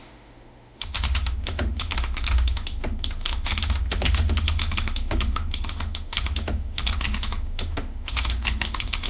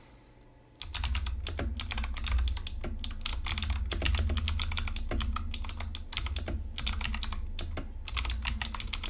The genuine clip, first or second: second